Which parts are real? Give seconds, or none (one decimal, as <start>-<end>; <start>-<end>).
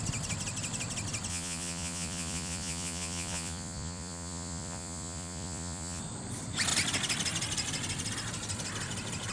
0.0-1.3; 6.0-9.3